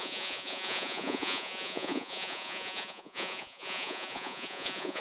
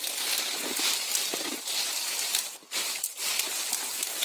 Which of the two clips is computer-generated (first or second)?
first